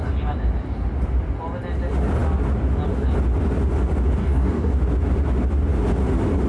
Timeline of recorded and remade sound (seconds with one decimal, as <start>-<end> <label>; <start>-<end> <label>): 0.0-4.2 recorded; 4.2-4.7 remade; 4.7-6.5 recorded